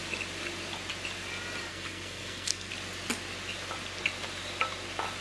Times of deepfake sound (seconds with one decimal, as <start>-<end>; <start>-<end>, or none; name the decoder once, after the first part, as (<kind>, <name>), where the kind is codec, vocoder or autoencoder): 1.7-2.7 (codec, SNAC)